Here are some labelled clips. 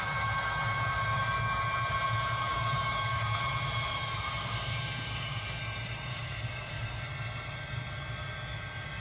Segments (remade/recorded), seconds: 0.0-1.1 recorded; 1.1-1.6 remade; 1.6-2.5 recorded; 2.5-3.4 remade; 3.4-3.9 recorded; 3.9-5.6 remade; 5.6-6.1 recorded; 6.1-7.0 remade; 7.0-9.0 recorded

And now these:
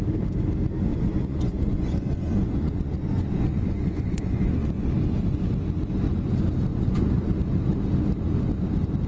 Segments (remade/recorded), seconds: 0.0-0.9 recorded; 0.9-4.9 remade; 4.9-6.7 recorded; 6.7-7.3 remade; 7.3-9.1 recorded

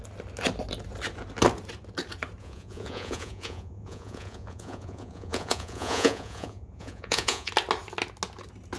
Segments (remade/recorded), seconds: 0.0-2.4 recorded; 2.4-7.5 remade; 7.5-8.8 recorded

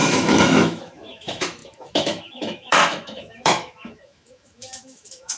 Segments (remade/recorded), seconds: 0.0-5.4 remade

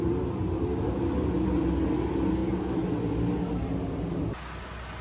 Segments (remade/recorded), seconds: 0.0-5.0 recorded

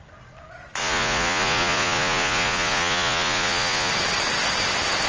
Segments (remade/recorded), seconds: 0.0-0.8 recorded; 0.8-3.9 remade; 3.9-5.1 recorded

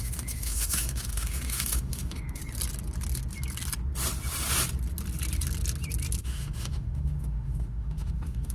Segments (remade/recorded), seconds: 0.0-2.4 remade; 2.4-6.2 recorded; 6.2-8.5 remade

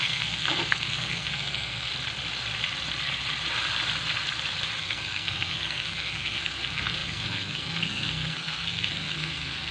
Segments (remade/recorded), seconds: 0.0-1.9 remade; 1.9-4.8 recorded; 4.8-9.7 remade